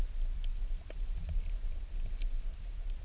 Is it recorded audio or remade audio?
recorded